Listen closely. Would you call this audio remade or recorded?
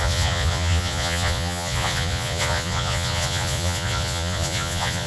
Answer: remade